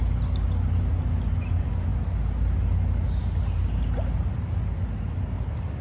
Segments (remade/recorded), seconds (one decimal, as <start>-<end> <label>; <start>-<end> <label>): 0.0-5.8 recorded